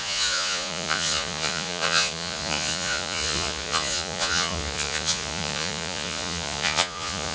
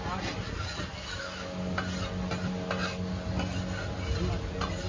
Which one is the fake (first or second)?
first